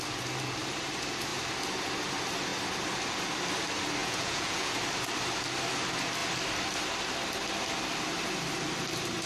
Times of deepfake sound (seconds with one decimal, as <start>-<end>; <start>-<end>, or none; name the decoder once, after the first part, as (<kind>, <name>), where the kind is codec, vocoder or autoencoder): 4.0-4.7 (vocoder, Vocos)